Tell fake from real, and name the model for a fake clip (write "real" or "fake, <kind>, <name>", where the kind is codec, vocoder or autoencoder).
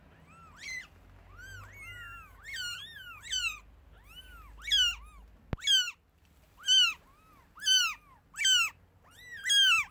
real